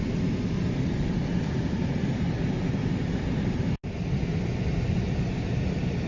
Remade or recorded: recorded